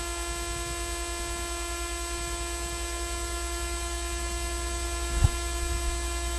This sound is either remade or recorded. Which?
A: recorded